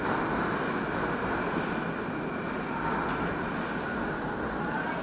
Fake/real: real